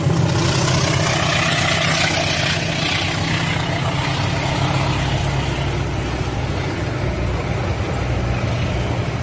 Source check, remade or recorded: recorded